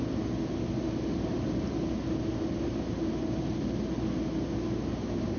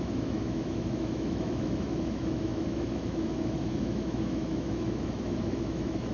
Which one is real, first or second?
first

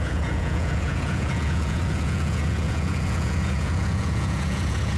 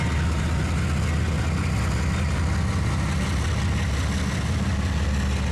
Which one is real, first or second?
second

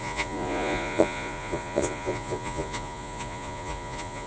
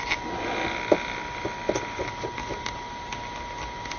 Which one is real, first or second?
second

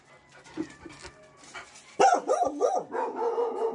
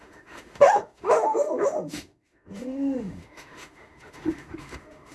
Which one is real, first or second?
first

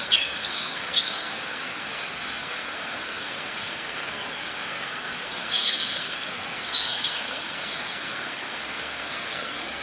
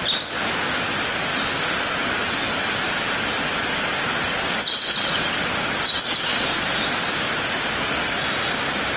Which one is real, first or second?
second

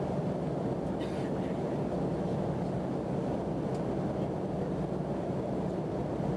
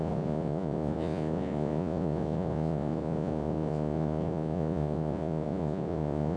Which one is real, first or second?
first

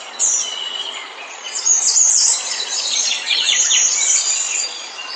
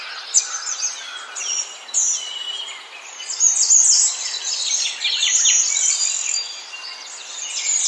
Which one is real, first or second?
second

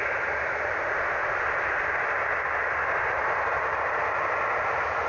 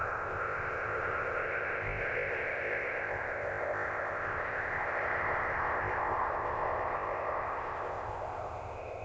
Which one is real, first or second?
first